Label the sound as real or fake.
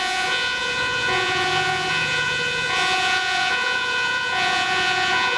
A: fake